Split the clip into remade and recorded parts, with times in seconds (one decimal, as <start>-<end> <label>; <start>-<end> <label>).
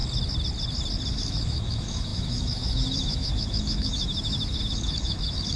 0.0-1.1 recorded; 1.1-5.6 remade